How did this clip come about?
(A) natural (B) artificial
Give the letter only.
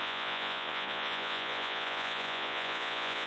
B